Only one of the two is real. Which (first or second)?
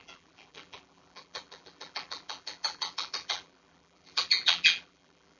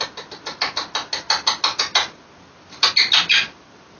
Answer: second